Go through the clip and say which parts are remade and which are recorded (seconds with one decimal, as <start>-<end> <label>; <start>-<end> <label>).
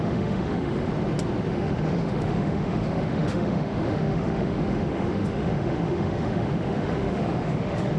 0.0-0.9 remade; 0.9-1.5 recorded; 1.5-8.0 remade